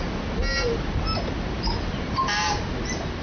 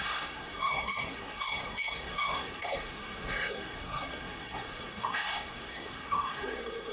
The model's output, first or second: second